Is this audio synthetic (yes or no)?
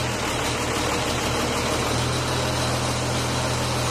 no